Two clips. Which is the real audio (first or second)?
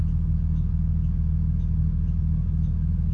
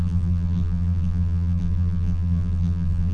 first